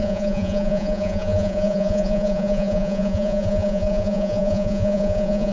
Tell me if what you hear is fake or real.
fake